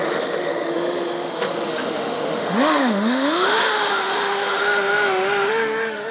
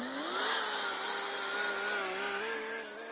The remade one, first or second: first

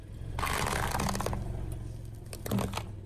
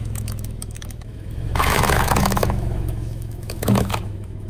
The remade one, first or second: second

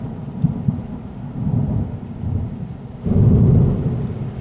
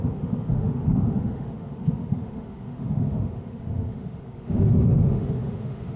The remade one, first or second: second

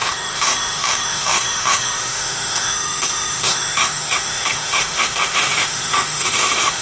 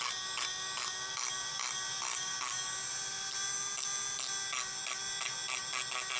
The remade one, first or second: first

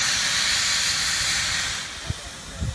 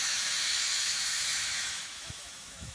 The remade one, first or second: second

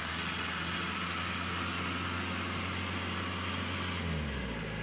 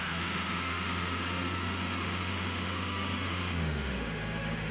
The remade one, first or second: second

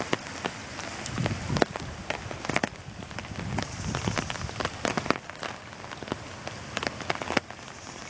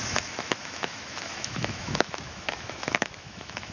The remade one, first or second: second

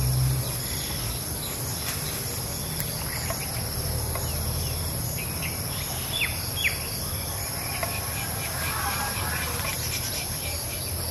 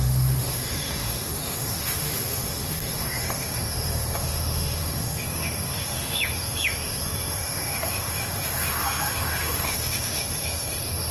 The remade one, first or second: second